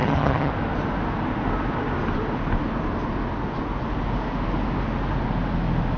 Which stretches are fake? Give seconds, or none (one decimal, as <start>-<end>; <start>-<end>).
0.0-0.5